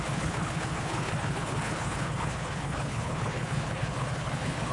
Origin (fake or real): fake